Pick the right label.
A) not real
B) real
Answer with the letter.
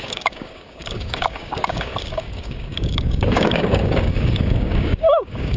A